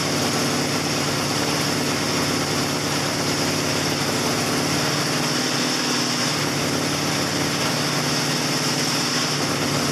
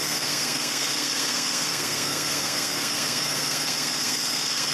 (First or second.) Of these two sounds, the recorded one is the first